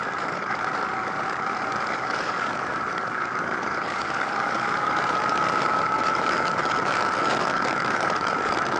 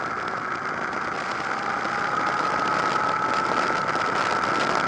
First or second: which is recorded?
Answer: second